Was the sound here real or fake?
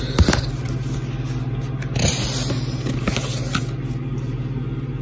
real